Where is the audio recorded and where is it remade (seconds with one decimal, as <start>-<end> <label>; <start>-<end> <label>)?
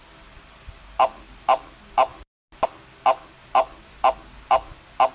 0.0-5.1 recorded